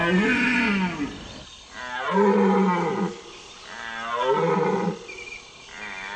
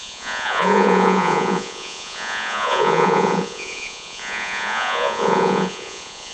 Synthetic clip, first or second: second